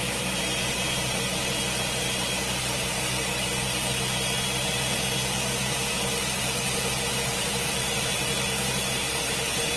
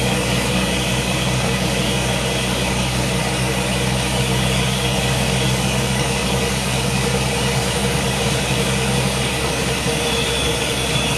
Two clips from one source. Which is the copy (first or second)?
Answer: second